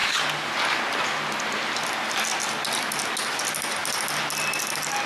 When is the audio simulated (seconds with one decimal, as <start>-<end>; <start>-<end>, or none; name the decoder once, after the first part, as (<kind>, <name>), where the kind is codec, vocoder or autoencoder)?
none